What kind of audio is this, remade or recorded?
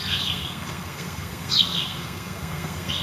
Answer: remade